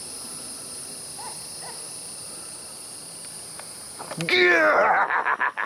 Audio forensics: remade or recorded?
recorded